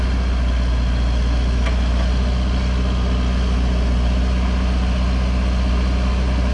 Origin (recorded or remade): recorded